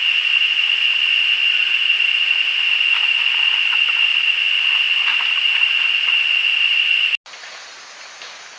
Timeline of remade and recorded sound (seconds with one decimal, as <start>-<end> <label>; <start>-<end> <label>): 0.0-8.6 recorded